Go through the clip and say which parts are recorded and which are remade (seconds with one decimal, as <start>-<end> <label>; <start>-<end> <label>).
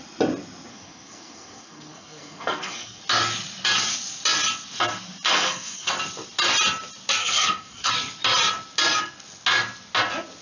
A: 0.0-0.7 recorded; 0.7-3.0 remade; 3.0-5.3 recorded; 5.3-5.9 remade; 5.9-7.2 recorded; 7.2-7.9 remade; 7.9-10.4 recorded